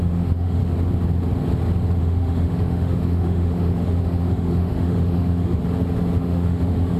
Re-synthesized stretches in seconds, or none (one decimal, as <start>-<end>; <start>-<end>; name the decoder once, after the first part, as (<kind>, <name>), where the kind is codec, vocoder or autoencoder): 0.0-0.6 (autoencoder, DAC-VAE); 2.0-5.6; 6.2-7.0